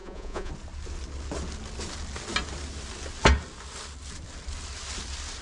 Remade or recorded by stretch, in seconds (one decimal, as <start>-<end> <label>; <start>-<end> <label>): 0.0-0.5 remade; 0.5-5.4 recorded